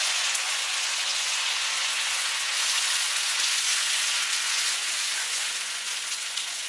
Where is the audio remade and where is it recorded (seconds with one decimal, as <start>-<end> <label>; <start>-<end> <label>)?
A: 0.0-6.7 remade